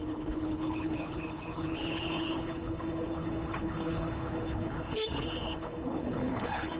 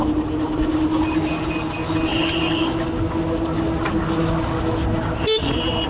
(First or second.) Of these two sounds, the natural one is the second